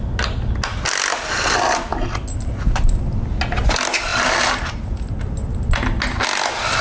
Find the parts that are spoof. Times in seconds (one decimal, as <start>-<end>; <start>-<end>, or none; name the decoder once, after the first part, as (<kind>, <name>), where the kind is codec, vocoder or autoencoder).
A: none